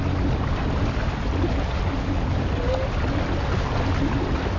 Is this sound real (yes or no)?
yes